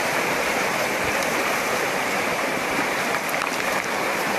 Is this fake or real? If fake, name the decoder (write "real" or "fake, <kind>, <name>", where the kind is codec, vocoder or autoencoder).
fake, vocoder, BigVGAN v2